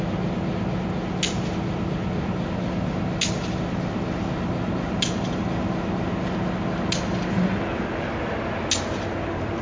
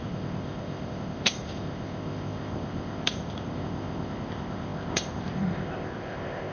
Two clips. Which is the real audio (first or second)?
first